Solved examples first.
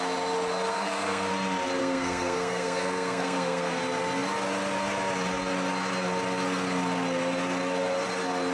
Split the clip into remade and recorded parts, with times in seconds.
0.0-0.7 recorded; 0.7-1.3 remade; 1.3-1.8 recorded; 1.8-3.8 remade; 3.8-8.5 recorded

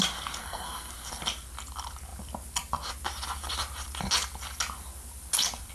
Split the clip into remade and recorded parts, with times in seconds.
0.0-0.4 recorded; 0.4-0.9 remade; 0.9-5.7 recorded

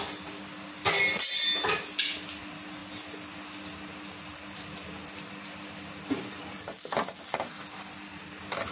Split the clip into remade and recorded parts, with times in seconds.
0.0-8.7 recorded

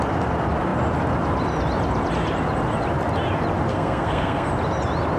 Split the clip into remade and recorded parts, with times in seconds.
0.0-3.7 recorded; 3.7-4.5 remade; 4.5-5.2 recorded